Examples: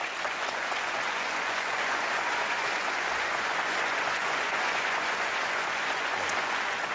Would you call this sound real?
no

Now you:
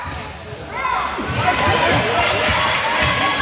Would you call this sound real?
yes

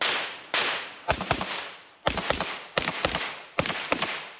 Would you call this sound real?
yes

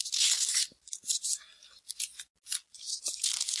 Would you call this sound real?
yes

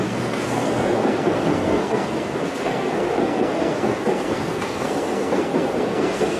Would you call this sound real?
no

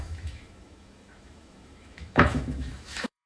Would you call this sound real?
no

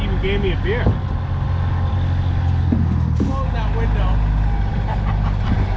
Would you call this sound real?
yes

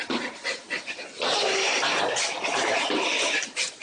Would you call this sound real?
yes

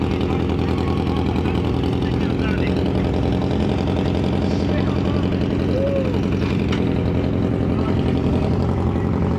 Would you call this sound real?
yes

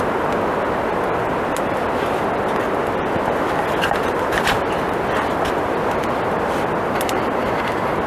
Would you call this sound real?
yes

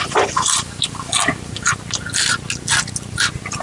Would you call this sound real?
yes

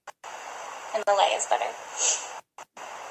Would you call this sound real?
yes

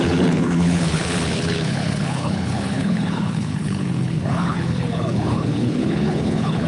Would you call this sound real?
no